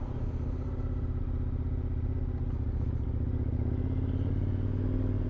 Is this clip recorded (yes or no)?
yes